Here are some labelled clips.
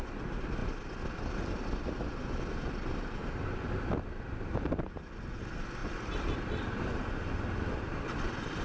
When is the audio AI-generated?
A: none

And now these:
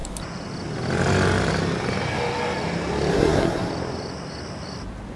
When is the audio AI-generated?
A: 3.1-3.7 (codec, SNAC)

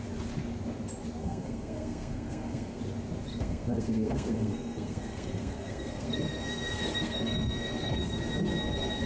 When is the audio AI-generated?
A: 1.2-2.8 (codec, SNAC); 3.3-8.2

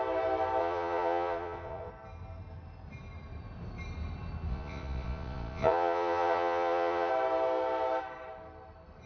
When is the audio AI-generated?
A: 0.6-1.9 (vocoder, Vocos); 4.5-7.1

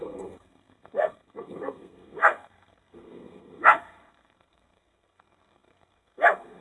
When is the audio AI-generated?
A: 0.0-6.6 (codec, SNAC)